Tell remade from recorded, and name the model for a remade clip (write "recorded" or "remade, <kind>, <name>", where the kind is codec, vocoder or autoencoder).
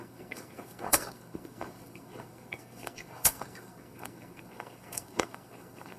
remade, codec, SNAC